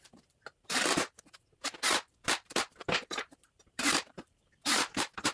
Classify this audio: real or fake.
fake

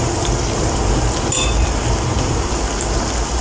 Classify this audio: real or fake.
real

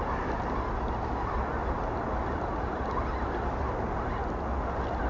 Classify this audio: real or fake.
real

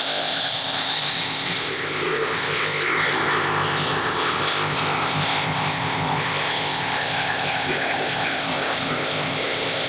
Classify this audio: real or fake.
fake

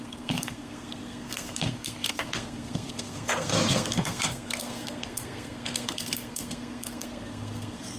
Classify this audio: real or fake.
fake